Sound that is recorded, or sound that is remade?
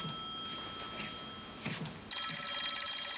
recorded